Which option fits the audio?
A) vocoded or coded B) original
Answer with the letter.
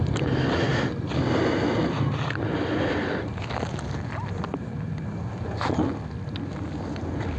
B